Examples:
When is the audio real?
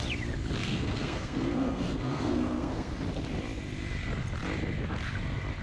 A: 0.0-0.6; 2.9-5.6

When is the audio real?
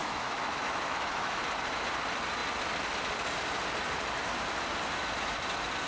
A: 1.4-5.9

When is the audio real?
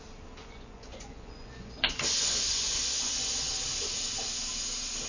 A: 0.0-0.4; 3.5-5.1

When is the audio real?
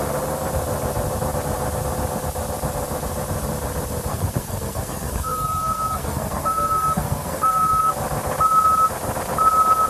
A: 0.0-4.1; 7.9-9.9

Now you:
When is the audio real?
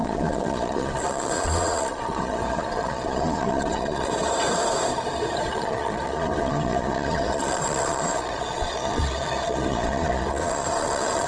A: 4.1-5.5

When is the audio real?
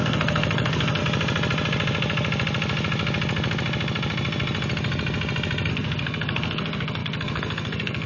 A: 1.0-5.7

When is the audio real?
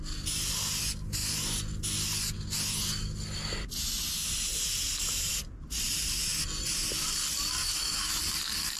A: 0.0-7.6; 8.2-8.8